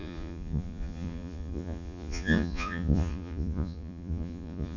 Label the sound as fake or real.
fake